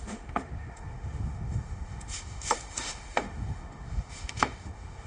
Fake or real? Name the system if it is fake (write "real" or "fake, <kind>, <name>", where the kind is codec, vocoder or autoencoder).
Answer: fake, autoencoder, DAC-VAE